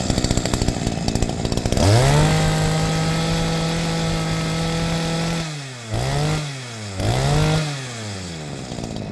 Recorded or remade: recorded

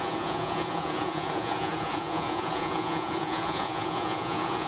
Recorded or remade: remade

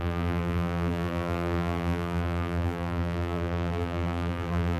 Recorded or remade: remade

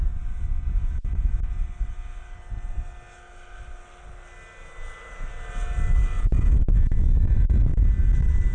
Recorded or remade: recorded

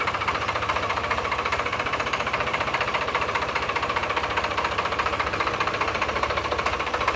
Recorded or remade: remade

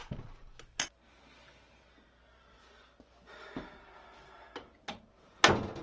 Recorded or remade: recorded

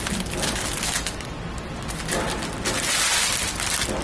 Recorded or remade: recorded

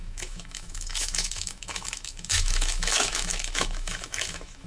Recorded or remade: remade